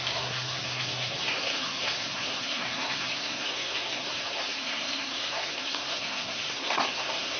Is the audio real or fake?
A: fake